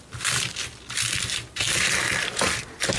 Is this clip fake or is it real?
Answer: real